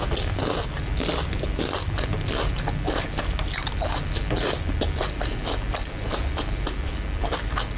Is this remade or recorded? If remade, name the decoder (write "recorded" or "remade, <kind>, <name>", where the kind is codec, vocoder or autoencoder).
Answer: recorded